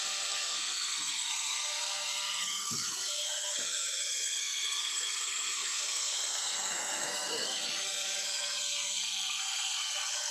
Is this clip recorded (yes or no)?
no